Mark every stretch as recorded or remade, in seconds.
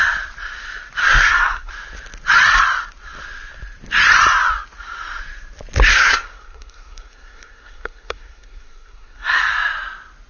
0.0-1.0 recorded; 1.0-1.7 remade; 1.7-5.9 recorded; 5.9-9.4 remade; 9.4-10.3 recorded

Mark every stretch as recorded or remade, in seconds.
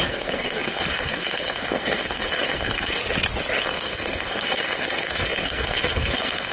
0.0-3.0 remade; 3.0-3.6 recorded; 3.6-6.5 remade